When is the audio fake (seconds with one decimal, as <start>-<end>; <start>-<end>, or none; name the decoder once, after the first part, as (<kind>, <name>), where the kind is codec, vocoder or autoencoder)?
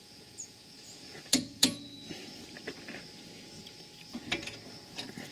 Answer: 0.0-2.0 (vocoder, Vocos)